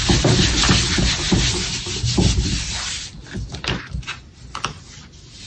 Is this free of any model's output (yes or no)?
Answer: yes